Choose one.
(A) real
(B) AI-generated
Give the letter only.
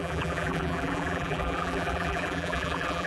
B